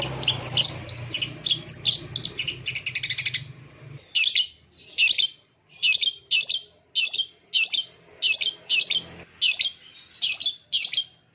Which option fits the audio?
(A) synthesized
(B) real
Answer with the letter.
B